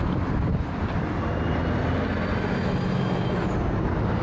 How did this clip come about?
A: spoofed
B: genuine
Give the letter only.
B